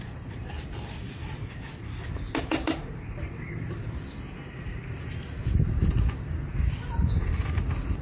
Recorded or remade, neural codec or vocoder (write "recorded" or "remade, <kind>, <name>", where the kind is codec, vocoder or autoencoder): recorded